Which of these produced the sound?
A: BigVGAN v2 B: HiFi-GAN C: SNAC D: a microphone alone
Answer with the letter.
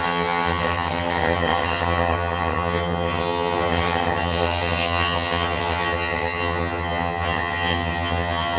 B